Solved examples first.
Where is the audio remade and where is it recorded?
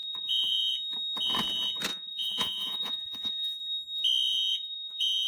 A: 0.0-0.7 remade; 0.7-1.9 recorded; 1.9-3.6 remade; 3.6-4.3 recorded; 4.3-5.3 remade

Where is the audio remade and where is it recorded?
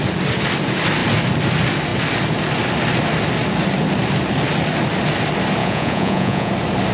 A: 0.0-5.6 recorded; 5.6-6.5 remade; 6.5-6.9 recorded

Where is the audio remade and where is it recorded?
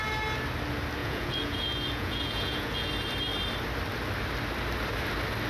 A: 0.0-1.0 recorded; 1.0-2.9 remade; 2.9-5.5 recorded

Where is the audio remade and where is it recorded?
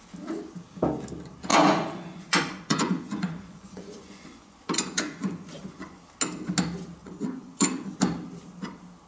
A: 0.0-1.5 recorded; 1.5-6.0 remade; 6.0-7.0 recorded; 7.0-7.9 remade; 7.9-9.1 recorded